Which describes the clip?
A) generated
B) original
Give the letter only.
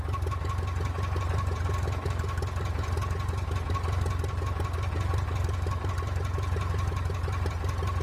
B